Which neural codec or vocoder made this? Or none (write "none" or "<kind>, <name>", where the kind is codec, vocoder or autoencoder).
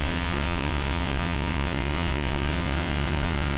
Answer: vocoder, WaveNeXt